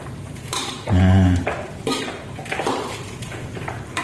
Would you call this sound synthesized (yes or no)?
yes